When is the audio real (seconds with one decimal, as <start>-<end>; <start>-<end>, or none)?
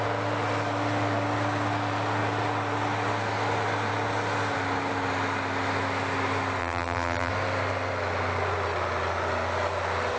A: 0.0-6.6; 7.3-10.2